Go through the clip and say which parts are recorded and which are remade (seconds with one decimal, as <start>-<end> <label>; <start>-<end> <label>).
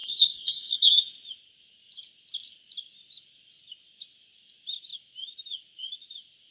0.0-1.0 remade; 1.0-6.5 recorded